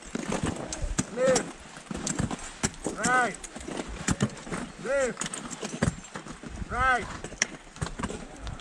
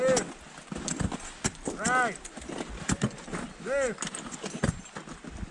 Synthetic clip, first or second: first